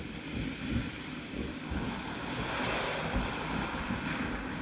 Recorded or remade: recorded